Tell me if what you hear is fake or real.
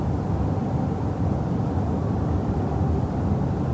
fake